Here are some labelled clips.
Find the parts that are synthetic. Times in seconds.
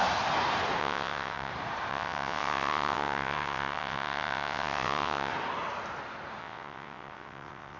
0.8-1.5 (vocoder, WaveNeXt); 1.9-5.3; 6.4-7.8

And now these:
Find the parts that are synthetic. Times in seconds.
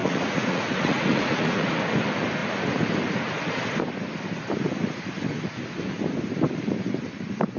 0.0-1.8 (vocoder, Vocos)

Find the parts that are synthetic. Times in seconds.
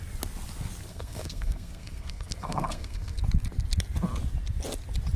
0.9-3.2 (codec, SNAC)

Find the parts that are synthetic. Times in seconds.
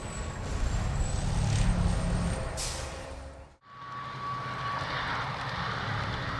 none